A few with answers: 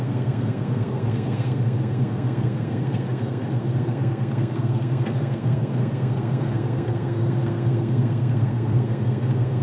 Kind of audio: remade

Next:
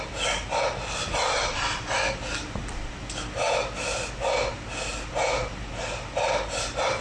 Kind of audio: recorded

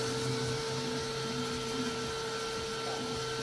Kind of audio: recorded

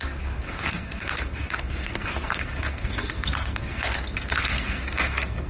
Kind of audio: remade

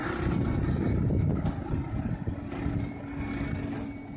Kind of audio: recorded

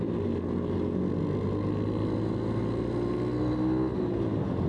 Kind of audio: recorded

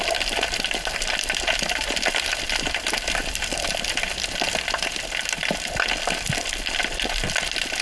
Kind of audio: recorded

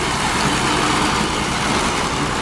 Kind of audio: recorded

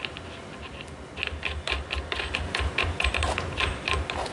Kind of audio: recorded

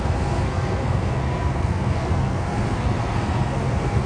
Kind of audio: remade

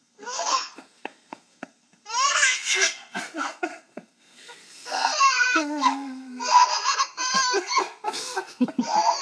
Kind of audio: remade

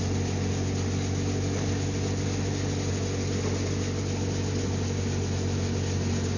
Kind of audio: recorded